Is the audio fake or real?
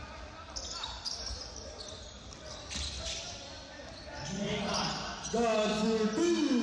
real